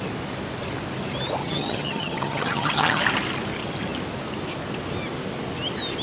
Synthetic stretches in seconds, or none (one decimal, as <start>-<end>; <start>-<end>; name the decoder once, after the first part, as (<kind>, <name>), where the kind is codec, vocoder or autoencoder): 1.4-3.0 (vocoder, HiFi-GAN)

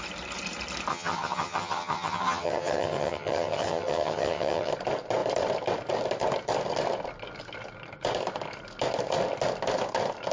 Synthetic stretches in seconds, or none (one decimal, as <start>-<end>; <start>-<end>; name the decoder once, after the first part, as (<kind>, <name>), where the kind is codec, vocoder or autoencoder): 0.9-4.7 (vocoder, HiFi-GAN)

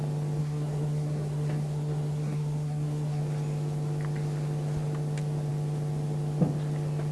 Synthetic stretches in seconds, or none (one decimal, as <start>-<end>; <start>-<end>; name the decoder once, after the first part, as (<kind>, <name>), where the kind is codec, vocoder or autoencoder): 0.4-3.2 (codec, SNAC)

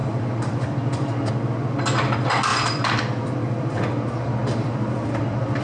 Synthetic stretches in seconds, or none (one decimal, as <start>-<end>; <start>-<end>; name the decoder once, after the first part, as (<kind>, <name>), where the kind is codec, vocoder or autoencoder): 0.0-1.3 (vocoder, BigVGAN v2); 2.5-3.8; 4.4-5.6